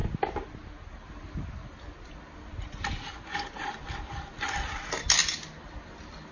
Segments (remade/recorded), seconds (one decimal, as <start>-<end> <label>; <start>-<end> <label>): 0.0-6.3 recorded